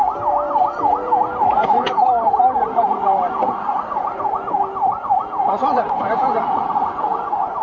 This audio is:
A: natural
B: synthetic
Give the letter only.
B